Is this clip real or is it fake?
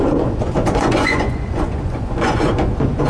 fake